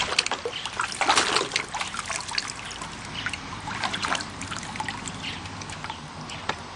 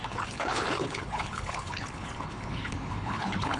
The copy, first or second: second